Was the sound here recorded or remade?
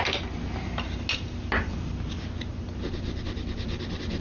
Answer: recorded